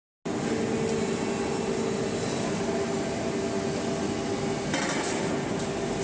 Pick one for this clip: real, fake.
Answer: real